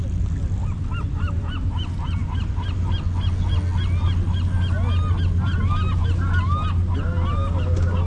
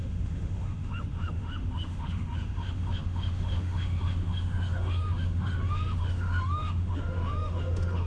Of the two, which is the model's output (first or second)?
second